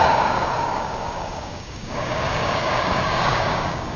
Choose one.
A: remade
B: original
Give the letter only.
A